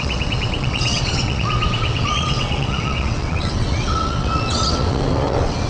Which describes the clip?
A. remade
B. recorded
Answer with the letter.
A